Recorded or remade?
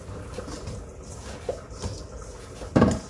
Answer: recorded